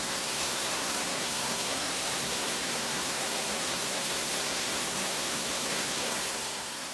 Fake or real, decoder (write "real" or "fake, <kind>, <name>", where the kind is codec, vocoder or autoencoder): fake, codec, SNAC